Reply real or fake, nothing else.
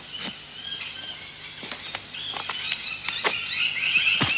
real